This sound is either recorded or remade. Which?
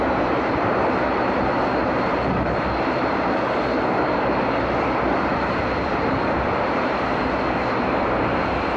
remade